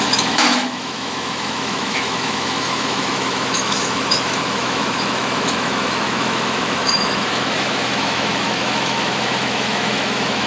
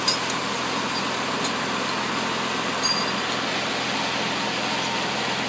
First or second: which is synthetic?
first